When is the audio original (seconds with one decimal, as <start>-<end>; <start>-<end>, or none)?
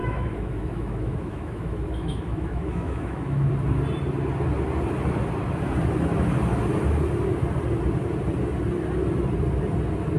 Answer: 3.5-10.2